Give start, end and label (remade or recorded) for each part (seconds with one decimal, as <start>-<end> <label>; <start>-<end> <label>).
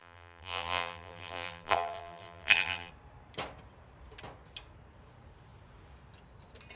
0.0-2.9 remade; 2.9-6.8 recorded